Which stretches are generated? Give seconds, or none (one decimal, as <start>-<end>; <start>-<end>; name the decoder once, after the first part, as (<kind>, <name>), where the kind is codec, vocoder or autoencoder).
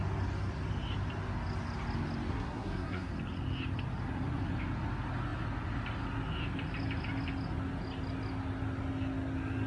2.3-3.1 (codec, SNAC)